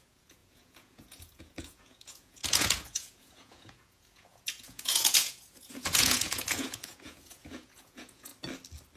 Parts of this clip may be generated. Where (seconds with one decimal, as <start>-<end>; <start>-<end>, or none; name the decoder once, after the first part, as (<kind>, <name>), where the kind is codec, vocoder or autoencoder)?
0.0-8.3 (vocoder, Vocos)